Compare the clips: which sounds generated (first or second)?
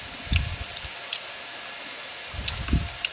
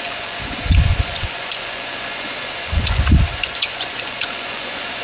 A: second